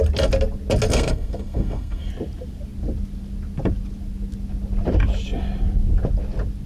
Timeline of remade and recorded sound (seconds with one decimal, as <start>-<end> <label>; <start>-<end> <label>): 0.0-0.9 recorded; 0.9-2.1 remade; 2.1-6.7 recorded